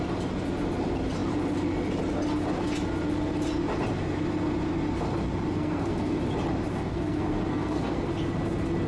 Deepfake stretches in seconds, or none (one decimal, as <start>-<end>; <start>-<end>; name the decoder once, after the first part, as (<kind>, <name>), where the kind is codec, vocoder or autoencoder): 5.5-6.2 (codec, SNAC); 6.7-8.1